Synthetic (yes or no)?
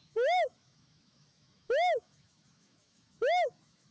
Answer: yes